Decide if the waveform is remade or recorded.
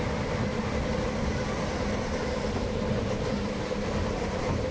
recorded